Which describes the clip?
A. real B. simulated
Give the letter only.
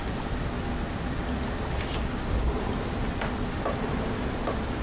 A